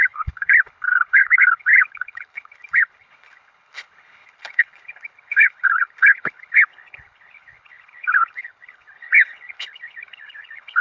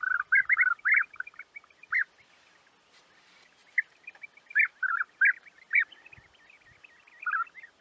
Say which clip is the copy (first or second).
first